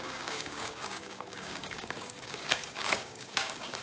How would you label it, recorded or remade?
remade